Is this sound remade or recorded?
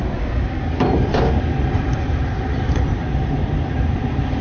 remade